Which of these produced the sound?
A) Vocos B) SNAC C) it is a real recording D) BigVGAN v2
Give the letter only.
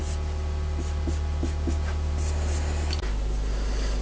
C